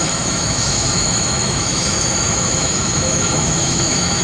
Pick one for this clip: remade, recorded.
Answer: remade